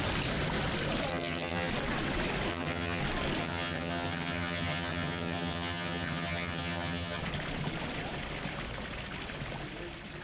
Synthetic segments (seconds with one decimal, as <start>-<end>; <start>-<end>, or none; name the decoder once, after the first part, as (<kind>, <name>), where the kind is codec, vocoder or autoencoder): 1.1-1.7 (vocoder, HiFi-GAN); 2.5-3.0; 3.4-7.2